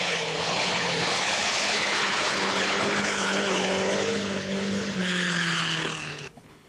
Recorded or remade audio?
remade